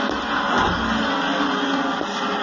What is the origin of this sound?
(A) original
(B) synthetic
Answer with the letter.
A